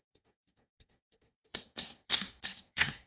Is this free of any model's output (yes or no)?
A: no